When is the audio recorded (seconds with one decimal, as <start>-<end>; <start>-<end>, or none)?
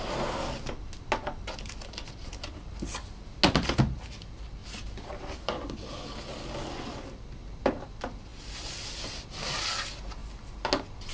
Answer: 0.0-11.1